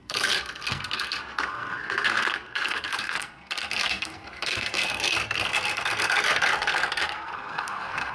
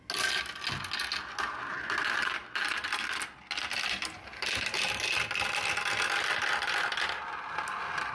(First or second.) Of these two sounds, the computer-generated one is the first